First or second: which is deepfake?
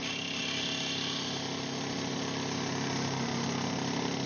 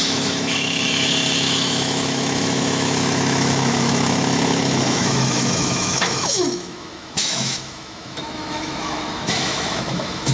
second